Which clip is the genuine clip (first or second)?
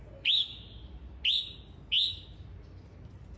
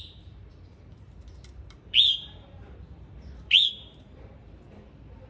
first